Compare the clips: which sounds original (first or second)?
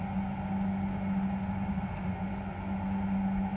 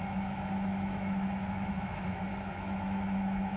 first